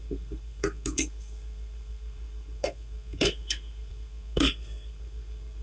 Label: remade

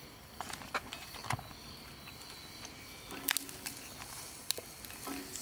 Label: recorded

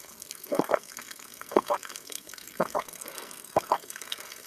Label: remade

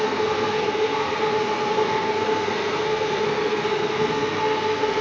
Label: remade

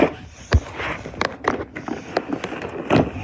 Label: recorded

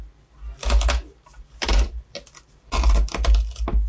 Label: recorded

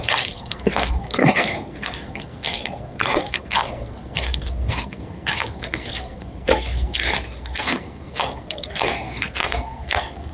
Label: remade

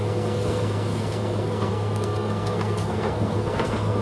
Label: remade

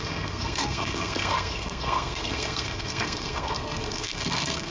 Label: remade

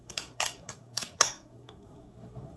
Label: remade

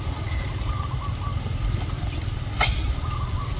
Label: recorded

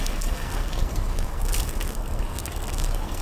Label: remade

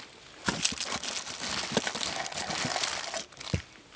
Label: recorded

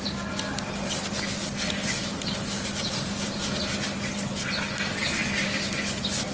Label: recorded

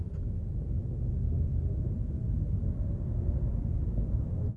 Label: recorded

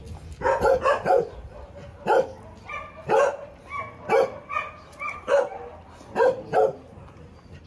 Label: recorded